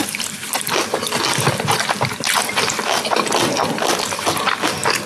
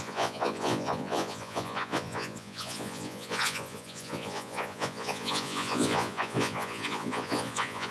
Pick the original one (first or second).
first